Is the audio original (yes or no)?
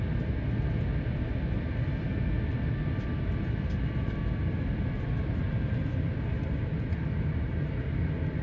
yes